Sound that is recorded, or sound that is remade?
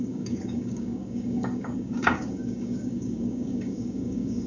remade